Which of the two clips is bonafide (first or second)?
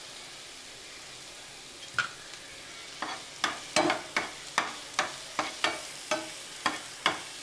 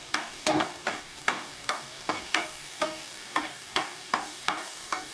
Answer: first